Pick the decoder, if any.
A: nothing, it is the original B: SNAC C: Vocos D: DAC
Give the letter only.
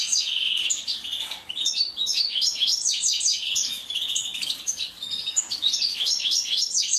D